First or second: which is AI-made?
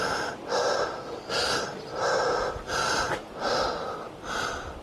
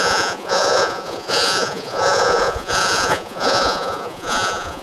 second